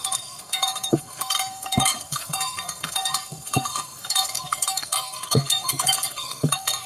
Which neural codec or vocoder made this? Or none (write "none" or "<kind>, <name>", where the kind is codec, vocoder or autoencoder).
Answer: codec, SNAC